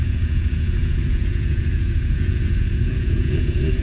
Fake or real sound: fake